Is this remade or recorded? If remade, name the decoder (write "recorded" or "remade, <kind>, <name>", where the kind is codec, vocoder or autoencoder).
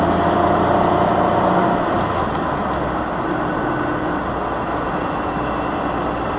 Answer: recorded